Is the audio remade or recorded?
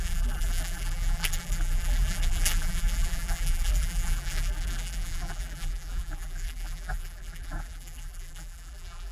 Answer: remade